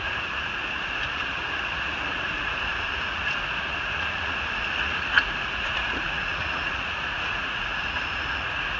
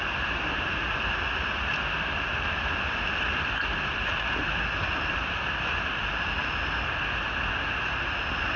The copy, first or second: first